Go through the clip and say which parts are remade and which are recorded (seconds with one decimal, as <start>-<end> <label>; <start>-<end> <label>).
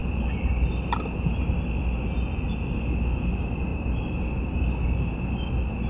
0.0-5.9 recorded